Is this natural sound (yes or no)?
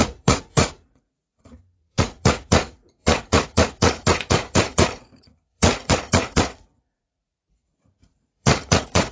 no